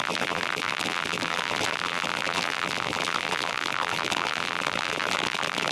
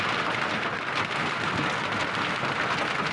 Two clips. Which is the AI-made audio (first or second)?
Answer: first